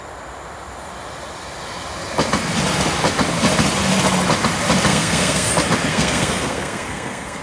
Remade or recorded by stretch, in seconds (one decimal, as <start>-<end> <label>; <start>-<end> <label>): 0.0-4.9 recorded; 4.9-5.5 remade; 5.5-5.9 recorded; 5.9-7.4 remade